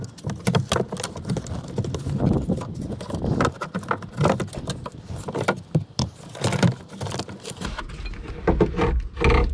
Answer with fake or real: real